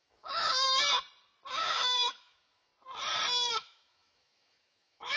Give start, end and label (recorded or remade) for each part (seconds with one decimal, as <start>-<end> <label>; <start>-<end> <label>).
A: 0.0-0.8 remade; 0.8-1.5 recorded; 1.5-2.7 remade; 2.7-3.5 recorded; 3.5-5.2 remade